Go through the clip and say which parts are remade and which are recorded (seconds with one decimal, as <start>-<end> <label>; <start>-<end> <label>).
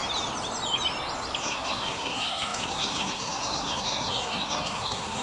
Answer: 0.0-1.4 recorded; 1.4-5.2 remade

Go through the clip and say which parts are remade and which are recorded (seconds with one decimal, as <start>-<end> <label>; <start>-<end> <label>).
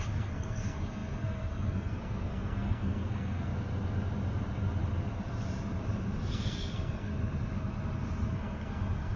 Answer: 0.0-3.5 remade; 3.5-6.3 recorded; 6.3-7.1 remade; 7.1-8.3 recorded; 8.3-9.2 remade